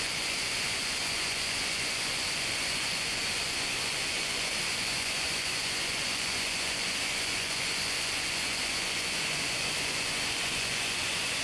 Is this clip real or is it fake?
fake